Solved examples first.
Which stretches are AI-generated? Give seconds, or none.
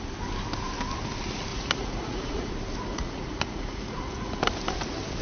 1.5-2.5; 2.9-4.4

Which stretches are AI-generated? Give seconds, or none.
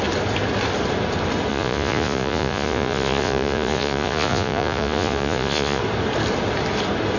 1.5-5.8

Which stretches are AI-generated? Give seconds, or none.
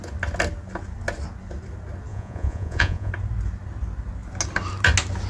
2.1-3.1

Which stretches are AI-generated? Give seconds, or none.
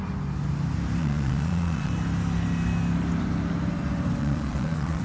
1.0-1.9; 4.2-5.0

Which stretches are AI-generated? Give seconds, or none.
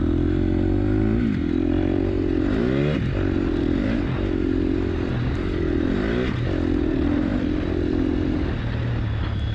none